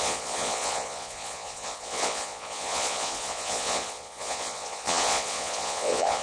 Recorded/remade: remade